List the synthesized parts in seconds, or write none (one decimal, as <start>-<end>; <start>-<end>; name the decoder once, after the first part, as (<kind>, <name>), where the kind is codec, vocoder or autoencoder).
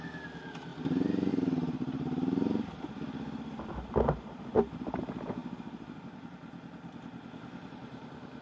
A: none